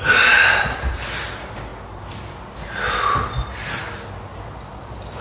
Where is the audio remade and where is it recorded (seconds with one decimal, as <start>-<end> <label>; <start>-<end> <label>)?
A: 0.0-5.2 recorded